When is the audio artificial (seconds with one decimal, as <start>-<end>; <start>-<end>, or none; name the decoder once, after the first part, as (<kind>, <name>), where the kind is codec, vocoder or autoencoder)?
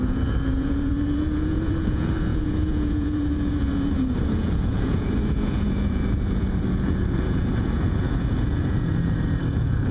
0.0-9.9 (vocoder, Vocos)